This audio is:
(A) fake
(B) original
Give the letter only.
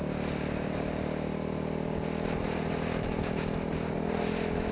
B